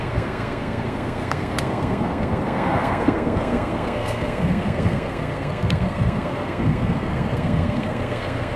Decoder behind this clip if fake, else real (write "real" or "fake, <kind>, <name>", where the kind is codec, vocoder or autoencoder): fake, codec, SNAC